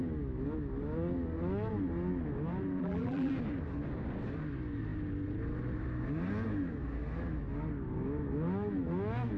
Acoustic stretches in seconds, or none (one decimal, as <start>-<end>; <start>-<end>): 0.0-2.8; 3.3-9.4

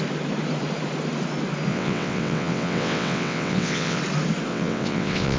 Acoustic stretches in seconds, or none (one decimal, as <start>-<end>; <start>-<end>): 0.0-1.7; 4.0-4.5

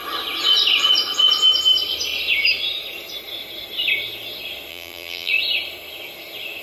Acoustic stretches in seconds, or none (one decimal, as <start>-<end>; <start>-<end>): 0.0-4.7; 5.3-6.6

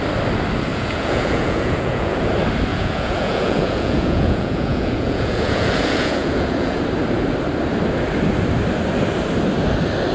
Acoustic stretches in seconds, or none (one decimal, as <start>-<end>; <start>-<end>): 0.0-0.7; 2.2-2.7; 6.8-10.1

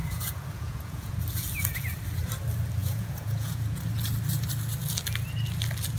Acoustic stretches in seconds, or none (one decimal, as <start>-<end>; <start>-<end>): 1.1-2.8; 3.8-6.0

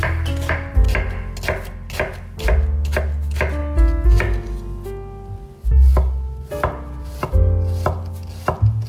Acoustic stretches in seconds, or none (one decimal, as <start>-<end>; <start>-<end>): 0.0-8.9

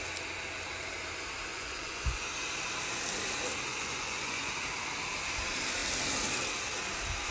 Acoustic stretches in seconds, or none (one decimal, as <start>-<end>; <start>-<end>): 0.0-1.5; 2.3-3.7; 4.5-7.3

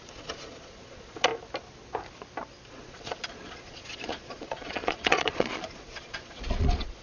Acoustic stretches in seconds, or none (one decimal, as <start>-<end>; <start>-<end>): 1.3-2.7